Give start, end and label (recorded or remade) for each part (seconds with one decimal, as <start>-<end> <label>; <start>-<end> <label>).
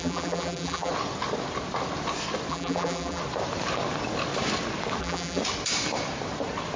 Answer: 0.0-0.9 remade; 0.9-2.5 recorded; 2.5-3.2 remade; 3.2-5.0 recorded; 5.0-5.4 remade; 5.4-6.8 recorded